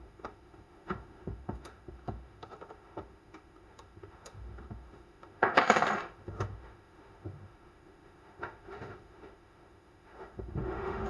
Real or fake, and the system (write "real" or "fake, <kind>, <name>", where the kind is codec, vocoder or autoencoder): fake, autoencoder, DAC-VAE